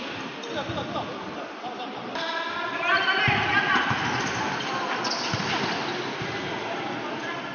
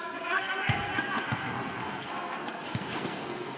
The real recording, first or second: first